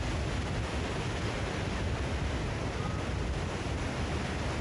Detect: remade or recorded recorded